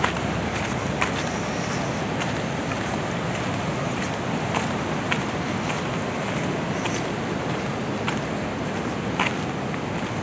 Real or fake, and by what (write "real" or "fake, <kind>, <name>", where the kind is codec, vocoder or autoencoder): real